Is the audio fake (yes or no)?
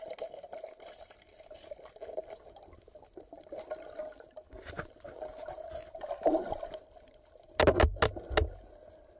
no